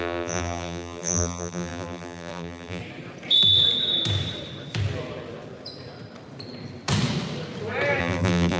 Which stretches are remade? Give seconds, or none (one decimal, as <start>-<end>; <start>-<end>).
0.0-2.8; 8.0-8.6